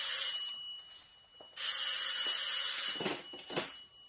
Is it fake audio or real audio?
real